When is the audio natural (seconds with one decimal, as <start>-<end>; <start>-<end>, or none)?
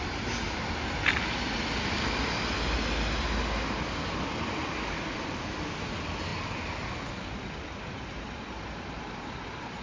0.0-9.8